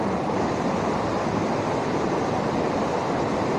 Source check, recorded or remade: recorded